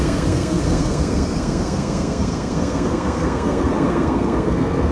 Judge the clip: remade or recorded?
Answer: remade